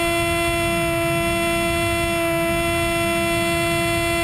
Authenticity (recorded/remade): recorded